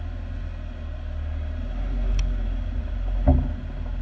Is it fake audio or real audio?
real